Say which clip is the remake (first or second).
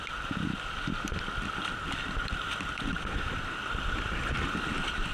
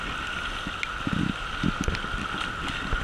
first